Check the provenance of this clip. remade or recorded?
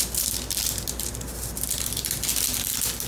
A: recorded